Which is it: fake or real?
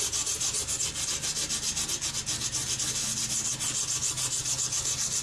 real